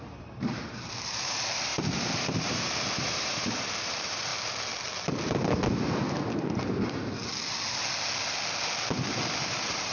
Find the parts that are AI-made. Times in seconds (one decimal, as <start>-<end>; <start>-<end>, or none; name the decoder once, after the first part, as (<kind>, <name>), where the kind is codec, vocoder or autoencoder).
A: 0.0-4.3 (vocoder, BigVGAN v2); 9.5-9.9